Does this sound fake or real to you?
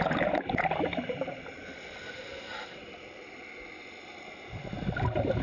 fake